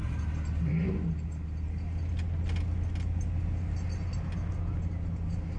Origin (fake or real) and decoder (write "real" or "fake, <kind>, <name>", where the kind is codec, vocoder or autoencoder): real